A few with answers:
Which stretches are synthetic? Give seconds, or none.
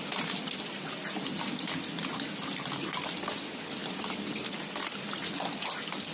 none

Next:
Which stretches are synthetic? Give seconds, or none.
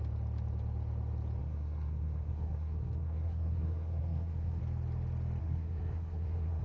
1.4-4.6 (codec, SNAC); 5.4-6.6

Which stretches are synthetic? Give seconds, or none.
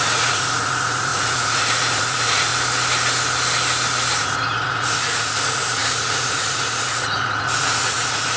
0.0-2.5 (vocoder, Vocos); 4.2-8.4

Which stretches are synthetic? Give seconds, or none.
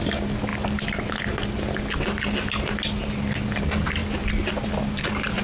none